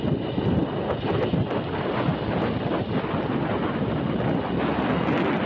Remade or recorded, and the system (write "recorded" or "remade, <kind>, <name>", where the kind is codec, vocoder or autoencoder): recorded